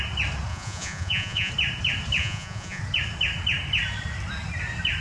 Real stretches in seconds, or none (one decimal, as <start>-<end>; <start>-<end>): 0.0-0.5; 1.5-2.2; 2.8-5.0